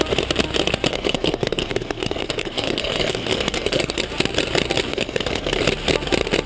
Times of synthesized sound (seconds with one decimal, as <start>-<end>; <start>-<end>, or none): 0.9-4.0; 4.9-5.6

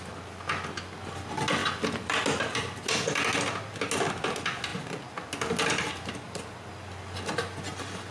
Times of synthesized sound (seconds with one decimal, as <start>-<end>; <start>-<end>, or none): none